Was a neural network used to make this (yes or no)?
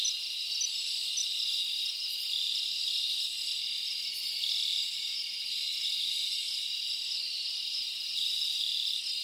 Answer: no